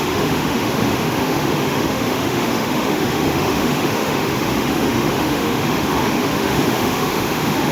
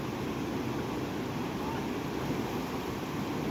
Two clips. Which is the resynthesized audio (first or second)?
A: first